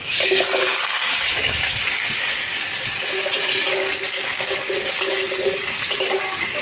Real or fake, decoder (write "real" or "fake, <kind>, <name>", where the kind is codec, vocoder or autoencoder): fake, codec, DAC